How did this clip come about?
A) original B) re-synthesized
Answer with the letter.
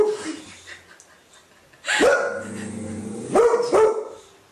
A